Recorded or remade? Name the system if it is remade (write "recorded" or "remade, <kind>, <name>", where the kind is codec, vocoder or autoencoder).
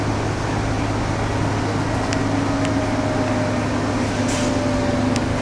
recorded